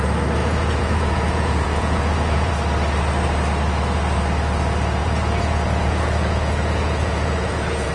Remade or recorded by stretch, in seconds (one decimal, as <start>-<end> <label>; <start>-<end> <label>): 0.0-0.4 recorded; 0.4-2.5 remade; 2.5-5.0 recorded; 5.0-7.9 remade